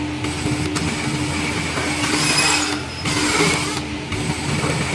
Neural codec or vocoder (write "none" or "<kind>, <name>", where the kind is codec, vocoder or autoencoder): none